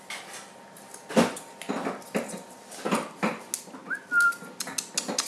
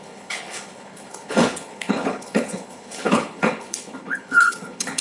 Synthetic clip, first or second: second